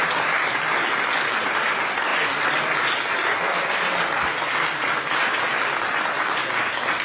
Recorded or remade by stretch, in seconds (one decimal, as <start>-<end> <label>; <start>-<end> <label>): 0.0-7.0 recorded